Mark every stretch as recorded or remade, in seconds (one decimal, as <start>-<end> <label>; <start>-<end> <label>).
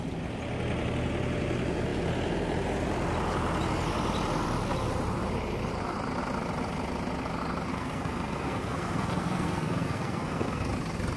0.0-7.7 recorded; 7.7-10.7 remade; 10.7-11.2 recorded